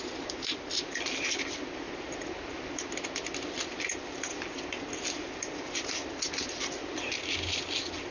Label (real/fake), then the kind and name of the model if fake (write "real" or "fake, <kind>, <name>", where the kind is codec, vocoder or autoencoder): real